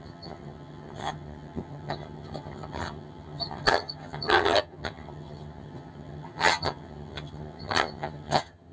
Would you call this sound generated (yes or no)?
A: yes